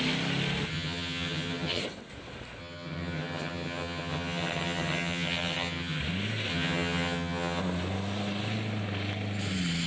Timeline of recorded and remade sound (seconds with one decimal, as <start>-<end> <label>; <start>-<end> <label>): 0.0-0.7 recorded; 0.7-1.8 remade; 1.8-2.6 recorded; 2.6-6.0 remade; 6.0-6.5 recorded; 6.5-7.6 remade; 7.6-9.9 recorded